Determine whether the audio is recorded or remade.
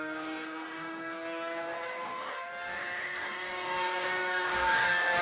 remade